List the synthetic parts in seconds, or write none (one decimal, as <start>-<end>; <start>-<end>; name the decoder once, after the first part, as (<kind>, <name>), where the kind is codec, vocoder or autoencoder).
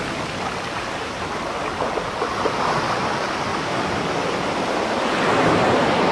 none